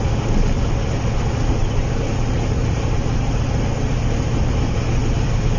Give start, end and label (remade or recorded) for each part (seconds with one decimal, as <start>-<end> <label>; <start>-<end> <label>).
0.0-1.6 recorded; 1.6-5.0 remade; 5.0-5.6 recorded